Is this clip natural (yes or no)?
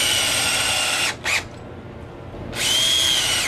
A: yes